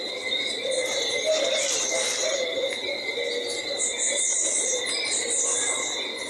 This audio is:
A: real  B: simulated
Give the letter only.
A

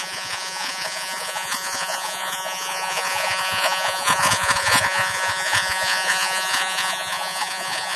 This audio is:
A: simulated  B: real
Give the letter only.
A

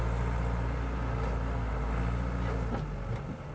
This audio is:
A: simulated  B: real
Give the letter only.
B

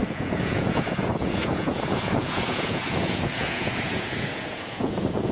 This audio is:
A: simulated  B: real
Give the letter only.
A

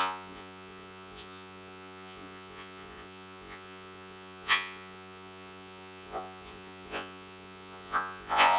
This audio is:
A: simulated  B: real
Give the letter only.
A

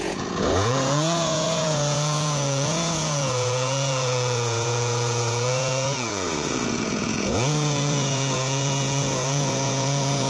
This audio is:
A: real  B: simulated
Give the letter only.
B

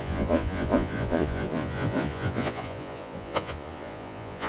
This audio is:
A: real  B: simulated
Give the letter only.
B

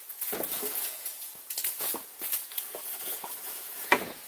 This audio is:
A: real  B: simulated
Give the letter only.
B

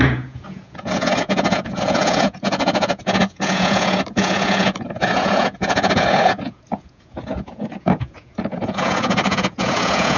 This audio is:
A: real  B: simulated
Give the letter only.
B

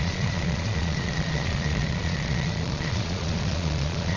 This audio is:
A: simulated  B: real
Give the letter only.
A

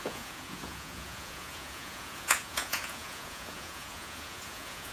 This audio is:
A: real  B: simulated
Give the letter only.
B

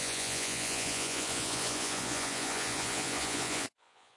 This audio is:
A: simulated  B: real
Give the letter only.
A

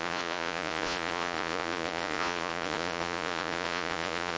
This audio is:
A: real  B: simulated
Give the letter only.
B